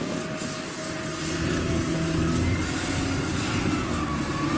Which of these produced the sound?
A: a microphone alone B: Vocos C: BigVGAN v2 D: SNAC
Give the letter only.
A